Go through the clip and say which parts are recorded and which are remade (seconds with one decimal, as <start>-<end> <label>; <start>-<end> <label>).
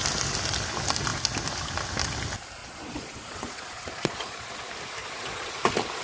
0.0-2.6 recorded; 2.6-4.6 remade; 4.6-5.0 recorded; 5.0-5.6 remade; 5.6-6.0 recorded